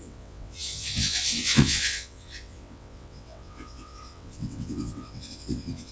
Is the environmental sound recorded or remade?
remade